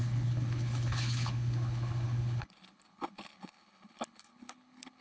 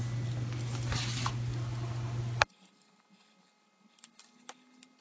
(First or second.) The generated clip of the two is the first